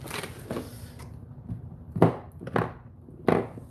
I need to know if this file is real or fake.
real